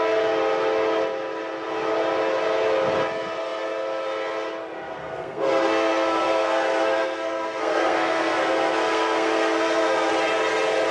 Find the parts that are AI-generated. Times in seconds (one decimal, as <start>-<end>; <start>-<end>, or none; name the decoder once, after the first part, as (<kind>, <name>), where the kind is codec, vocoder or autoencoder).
5.0-10.1 (codec, SNAC)